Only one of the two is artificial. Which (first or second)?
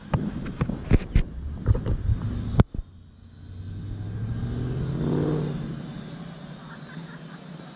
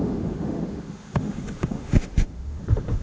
second